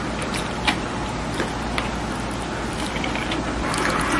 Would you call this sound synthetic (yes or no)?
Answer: no